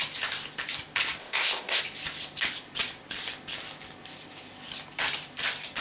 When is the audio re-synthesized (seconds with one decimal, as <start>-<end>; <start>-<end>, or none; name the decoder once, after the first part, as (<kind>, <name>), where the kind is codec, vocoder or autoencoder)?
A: 1.2-1.8 (codec, ZipCodec)